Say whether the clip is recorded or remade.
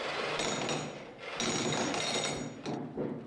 recorded